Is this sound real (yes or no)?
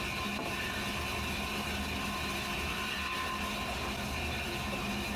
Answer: yes